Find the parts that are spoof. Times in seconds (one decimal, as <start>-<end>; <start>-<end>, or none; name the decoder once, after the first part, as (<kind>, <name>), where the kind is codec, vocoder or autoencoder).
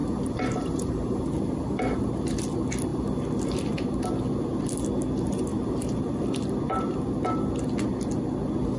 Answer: 0.0-1.3 (vocoder, BigVGAN v2); 5.5-7.0